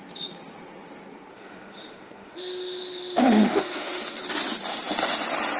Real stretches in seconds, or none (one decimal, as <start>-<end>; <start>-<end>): 0.0-1.3; 4.2-5.6